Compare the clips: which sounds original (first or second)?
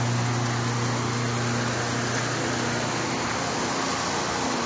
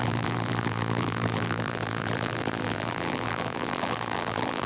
first